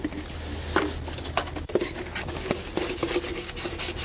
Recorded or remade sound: recorded